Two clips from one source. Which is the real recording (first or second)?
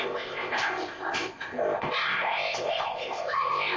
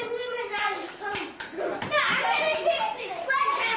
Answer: second